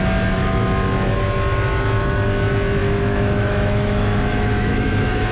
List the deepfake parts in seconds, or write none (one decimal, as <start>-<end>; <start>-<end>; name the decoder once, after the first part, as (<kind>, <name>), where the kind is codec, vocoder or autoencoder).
2.8-5.3 (autoencoder, DAC-VAE)